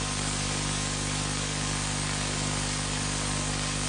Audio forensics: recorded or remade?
remade